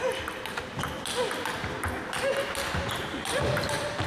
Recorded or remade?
recorded